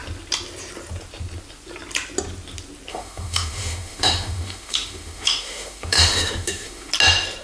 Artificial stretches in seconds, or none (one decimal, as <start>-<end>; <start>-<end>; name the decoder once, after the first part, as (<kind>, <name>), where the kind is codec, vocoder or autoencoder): 2.9-6.9 (autoencoder, DAC-VAE)